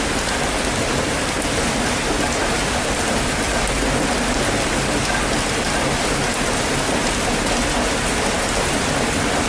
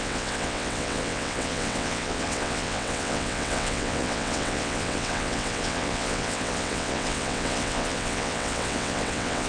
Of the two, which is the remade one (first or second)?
second